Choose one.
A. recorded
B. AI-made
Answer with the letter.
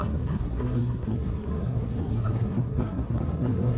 B